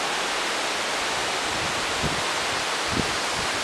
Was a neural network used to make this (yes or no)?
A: no